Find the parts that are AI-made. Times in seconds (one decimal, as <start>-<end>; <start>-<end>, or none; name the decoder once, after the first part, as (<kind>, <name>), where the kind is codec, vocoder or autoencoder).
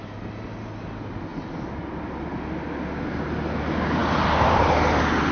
none